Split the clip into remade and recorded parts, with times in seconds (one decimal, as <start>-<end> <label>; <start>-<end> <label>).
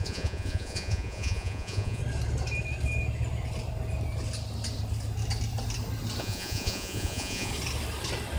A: 0.0-2.0 remade; 2.0-6.2 recorded; 6.2-7.5 remade; 7.5-8.4 recorded